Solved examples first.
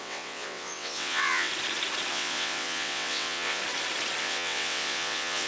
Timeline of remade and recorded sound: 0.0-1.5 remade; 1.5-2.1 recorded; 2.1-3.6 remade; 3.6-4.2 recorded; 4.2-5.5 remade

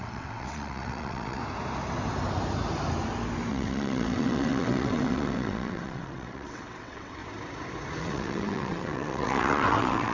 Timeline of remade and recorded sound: 0.0-1.4 remade; 1.4-3.5 recorded; 3.5-7.2 remade; 7.2-8.0 recorded; 8.0-10.1 remade